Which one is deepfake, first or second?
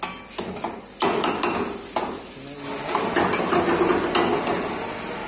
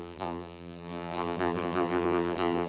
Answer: second